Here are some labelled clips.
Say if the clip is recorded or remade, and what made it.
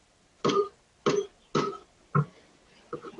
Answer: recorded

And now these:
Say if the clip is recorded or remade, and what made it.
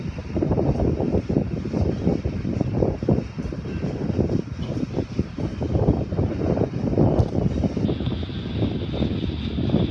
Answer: recorded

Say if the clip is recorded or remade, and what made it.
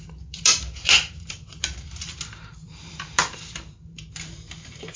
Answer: remade, vocoder, BigVGAN v2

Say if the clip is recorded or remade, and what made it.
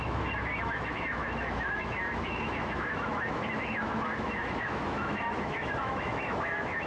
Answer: remade, autoencoder, DAC-VAE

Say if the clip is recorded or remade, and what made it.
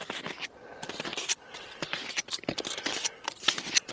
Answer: recorded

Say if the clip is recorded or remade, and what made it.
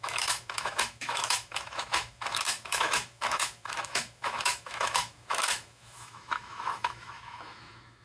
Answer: remade, autoencoder, DAC-VAE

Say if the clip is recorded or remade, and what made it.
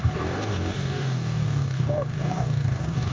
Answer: remade, codec, DAC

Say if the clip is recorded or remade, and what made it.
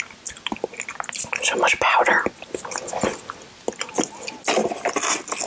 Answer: recorded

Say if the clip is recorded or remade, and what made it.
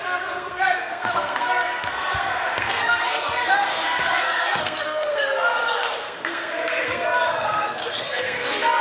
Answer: remade, codec, SNAC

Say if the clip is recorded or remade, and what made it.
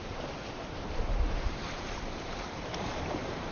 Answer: remade, vocoder, BigVGAN v2